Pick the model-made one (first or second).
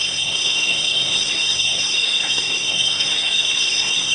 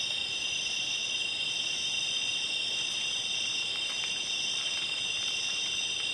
first